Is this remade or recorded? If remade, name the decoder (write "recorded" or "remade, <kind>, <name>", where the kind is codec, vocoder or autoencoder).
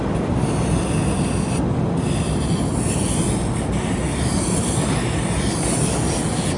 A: recorded